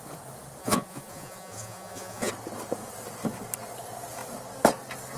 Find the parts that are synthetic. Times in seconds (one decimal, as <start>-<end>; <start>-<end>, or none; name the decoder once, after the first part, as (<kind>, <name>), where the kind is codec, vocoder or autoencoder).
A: 0.6-2.3 (vocoder, Vocos)